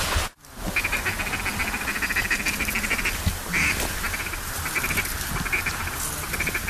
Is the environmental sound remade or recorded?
recorded